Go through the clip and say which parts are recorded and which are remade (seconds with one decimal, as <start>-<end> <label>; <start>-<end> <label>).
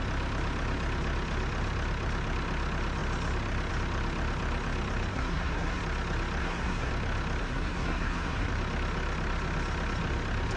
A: 0.0-5.1 recorded; 5.1-5.8 remade; 5.8-6.4 recorded; 6.4-6.9 remade; 6.9-7.4 recorded; 7.4-8.5 remade; 8.5-10.6 recorded